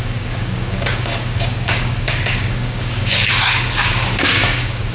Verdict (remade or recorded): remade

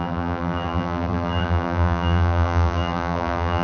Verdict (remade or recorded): remade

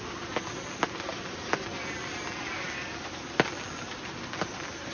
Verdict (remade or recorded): recorded